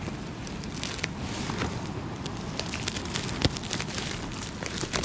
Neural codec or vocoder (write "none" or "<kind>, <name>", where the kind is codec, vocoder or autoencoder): none